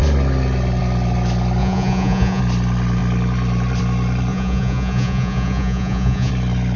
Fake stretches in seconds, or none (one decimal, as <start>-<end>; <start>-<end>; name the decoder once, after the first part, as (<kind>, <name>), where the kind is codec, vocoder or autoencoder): 1.6-2.4 (vocoder, Vocos); 4.3-6.3